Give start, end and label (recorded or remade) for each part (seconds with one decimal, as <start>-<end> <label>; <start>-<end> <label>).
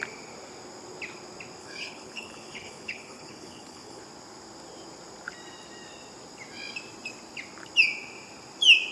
0.0-1.6 recorded; 1.6-4.0 remade; 4.0-8.9 recorded